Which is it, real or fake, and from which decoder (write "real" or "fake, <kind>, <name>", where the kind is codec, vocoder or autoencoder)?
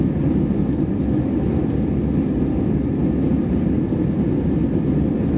real